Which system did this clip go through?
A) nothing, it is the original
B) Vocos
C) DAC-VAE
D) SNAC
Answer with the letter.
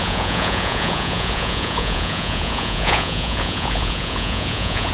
B